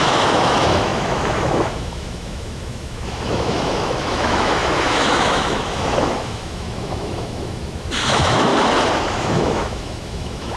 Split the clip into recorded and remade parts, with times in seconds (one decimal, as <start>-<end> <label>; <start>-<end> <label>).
0.0-8.5 remade; 8.5-9.1 recorded; 9.1-10.6 remade